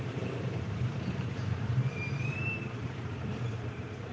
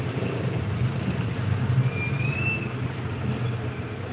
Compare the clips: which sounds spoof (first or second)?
first